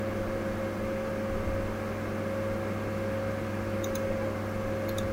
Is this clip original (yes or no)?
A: yes